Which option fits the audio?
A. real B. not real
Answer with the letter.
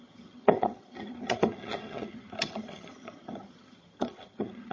B